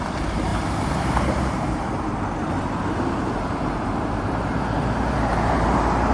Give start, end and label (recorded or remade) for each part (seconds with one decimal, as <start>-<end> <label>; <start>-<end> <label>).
0.0-6.1 remade